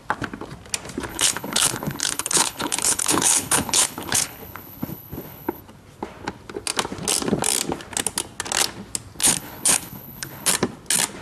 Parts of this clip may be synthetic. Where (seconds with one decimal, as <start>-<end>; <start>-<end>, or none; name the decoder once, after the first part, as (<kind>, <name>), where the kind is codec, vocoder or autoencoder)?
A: 1.1-5.6 (codec, HILCodec); 9.2-10.5

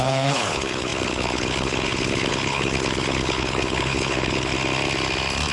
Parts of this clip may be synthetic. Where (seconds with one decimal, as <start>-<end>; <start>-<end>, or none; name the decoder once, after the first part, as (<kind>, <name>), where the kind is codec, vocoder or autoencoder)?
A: 0.0-4.5 (codec, HILCodec)

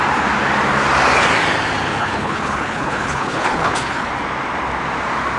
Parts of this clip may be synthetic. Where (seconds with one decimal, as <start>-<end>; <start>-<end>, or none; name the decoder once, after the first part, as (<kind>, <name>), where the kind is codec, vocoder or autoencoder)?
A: 2.0-4.1 (codec, HILCodec)

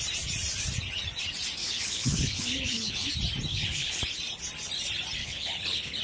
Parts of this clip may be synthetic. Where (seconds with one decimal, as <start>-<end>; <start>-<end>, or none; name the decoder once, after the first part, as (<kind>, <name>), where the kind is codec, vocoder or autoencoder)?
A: 1.6-3.1 (codec, HILCodec); 3.5-4.0; 5.2-6.0

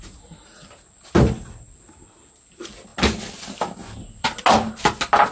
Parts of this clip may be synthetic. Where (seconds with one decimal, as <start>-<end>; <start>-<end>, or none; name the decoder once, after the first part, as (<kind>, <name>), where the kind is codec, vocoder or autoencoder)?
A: none

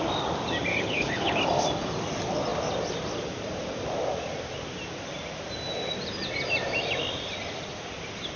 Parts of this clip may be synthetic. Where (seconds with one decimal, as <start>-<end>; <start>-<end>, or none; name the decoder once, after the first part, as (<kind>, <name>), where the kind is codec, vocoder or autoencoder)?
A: 0.7-1.4 (codec, HILCodec)